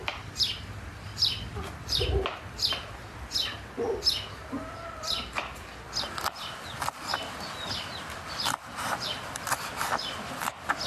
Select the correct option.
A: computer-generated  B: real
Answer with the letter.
A